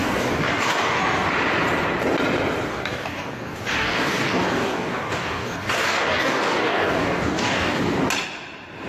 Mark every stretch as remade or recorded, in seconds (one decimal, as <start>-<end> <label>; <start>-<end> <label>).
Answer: 0.0-1.0 remade; 1.0-2.7 recorded; 2.7-7.8 remade; 7.8-8.9 recorded